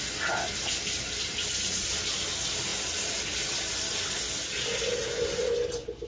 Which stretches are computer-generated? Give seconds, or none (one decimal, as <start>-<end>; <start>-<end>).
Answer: none